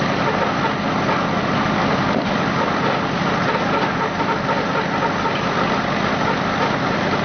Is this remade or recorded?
recorded